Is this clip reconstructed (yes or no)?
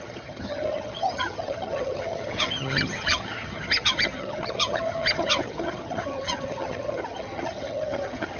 yes